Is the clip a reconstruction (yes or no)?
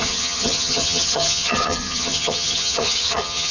yes